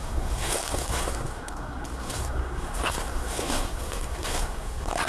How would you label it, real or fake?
fake